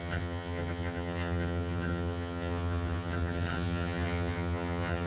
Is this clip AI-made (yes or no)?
yes